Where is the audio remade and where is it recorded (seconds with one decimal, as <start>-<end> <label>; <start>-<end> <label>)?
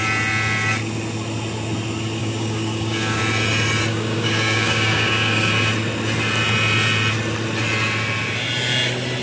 0.0-2.2 recorded; 2.2-3.2 remade; 3.2-3.9 recorded; 3.9-5.5 remade; 5.5-9.2 recorded